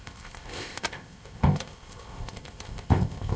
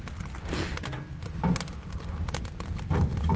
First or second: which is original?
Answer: second